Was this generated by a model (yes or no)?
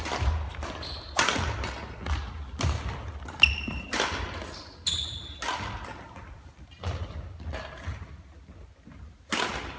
no